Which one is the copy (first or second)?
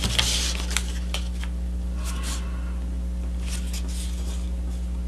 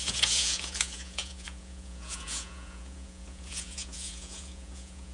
second